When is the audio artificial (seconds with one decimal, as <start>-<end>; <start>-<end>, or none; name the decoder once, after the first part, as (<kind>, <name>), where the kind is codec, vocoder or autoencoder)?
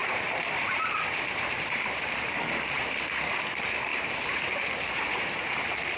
0.0-2.8 (vocoder, BigVGAN v2); 3.9-5.5